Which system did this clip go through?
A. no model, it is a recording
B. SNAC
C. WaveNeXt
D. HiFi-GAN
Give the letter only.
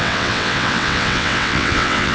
C